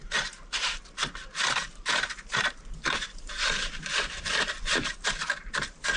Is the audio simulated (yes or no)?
yes